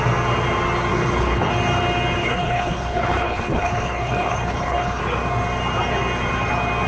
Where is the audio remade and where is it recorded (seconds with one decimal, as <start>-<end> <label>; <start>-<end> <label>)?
0.0-0.9 recorded; 0.9-1.5 remade; 1.5-2.2 recorded; 2.2-5.0 remade; 5.0-6.9 recorded